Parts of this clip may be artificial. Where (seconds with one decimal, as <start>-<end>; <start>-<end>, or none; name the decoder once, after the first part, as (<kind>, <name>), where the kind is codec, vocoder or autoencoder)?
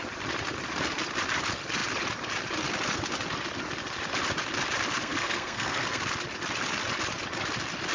5.0-6.0 (codec, SNAC)